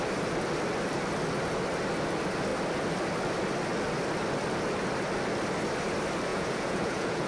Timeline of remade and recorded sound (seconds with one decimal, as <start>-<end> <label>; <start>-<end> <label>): 0.0-6.3 recorded; 6.3-7.3 remade